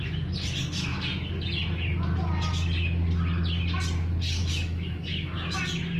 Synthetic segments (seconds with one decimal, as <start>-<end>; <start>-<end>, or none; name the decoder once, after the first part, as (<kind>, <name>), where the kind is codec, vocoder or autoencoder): 4.4-5.6 (autoencoder, DAC-VAE)